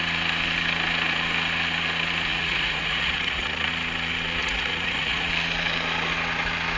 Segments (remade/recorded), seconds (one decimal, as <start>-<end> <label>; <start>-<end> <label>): 0.0-2.3 recorded; 2.3-3.7 remade; 3.7-4.4 recorded; 4.4-5.3 remade; 5.3-6.8 recorded